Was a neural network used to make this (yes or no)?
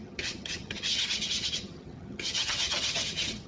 yes